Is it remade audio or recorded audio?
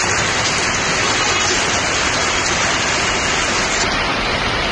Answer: remade